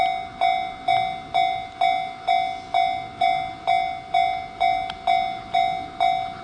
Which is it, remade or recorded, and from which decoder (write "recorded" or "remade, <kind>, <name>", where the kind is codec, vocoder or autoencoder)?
recorded